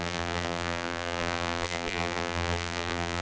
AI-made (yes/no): yes